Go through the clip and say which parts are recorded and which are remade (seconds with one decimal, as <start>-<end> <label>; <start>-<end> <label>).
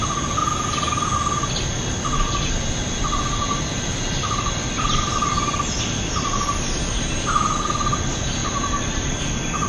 0.0-6.3 recorded; 6.3-7.7 remade; 7.7-8.4 recorded; 8.4-9.2 remade; 9.2-9.7 recorded